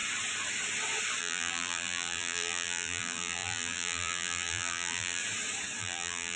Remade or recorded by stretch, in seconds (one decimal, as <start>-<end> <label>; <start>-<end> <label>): 0.0-1.2 recorded; 1.2-5.2 remade; 5.2-5.8 recorded; 5.8-6.4 remade